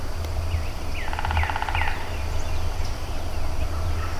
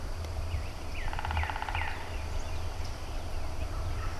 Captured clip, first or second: first